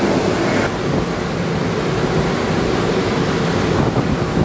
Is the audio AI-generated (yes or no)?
no